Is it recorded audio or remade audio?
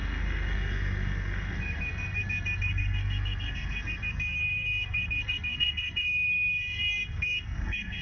remade